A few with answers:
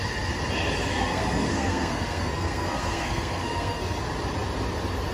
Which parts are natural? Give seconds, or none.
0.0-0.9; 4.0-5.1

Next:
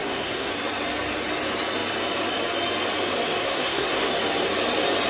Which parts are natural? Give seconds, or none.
0.5-3.4; 4.1-5.1

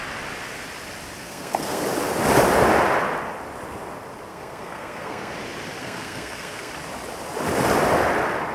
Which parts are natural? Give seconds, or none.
0.0-1.2; 1.8-4.3; 5.3-5.8; 6.7-8.5